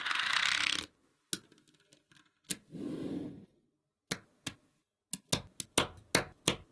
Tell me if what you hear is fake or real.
real